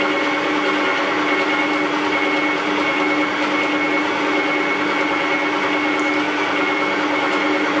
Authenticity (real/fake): real